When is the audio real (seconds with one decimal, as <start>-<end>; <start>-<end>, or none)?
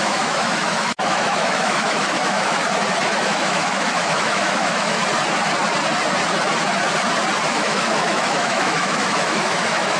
2.6-3.2; 5.0-7.5